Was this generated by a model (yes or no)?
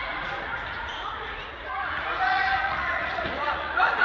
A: yes